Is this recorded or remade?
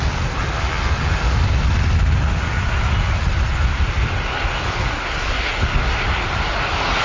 recorded